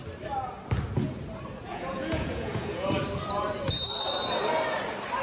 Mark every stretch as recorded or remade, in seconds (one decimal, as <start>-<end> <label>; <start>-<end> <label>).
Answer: 0.0-1.7 recorded; 1.7-2.9 remade; 2.9-5.2 recorded